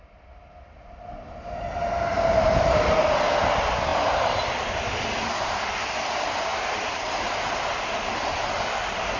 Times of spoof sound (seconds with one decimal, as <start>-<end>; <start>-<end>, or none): none